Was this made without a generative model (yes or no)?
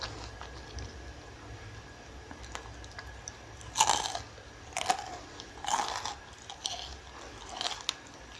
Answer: yes